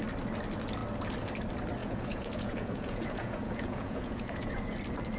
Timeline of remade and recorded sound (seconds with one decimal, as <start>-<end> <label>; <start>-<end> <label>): 0.0-1.8 recorded; 1.8-4.7 remade; 4.7-5.2 recorded